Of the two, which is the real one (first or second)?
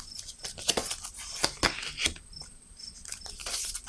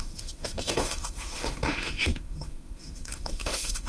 first